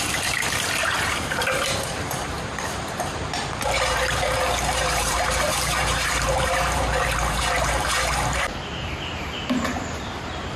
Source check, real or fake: fake